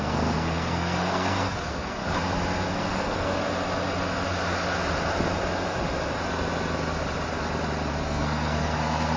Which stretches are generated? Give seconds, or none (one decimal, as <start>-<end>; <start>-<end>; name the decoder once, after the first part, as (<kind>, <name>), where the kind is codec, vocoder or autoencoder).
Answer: 0.0-2.0 (codec, SNAC); 2.7-3.3; 7.9-9.2